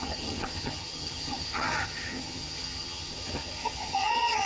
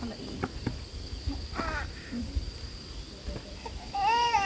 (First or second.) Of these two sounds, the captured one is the second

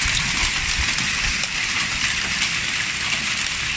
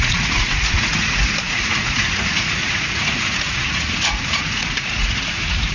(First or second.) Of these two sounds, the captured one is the first